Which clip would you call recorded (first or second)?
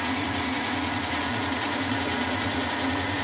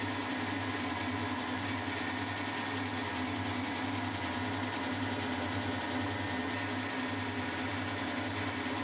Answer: second